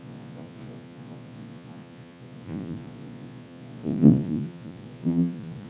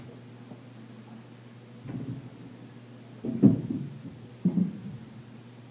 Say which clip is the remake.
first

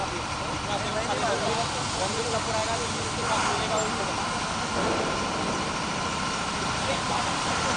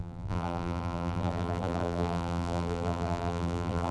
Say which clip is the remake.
second